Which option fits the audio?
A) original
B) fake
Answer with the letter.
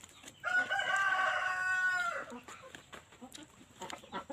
B